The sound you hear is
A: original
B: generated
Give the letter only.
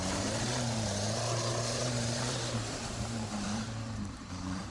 B